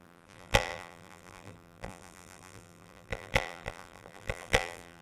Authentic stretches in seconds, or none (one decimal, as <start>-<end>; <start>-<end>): none